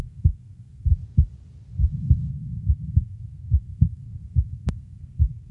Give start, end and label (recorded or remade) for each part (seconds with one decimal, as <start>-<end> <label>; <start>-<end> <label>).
0.0-0.9 remade; 0.9-2.3 recorded; 2.3-5.5 remade